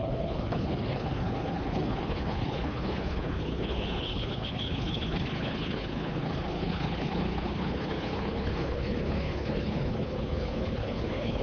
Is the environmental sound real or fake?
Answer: fake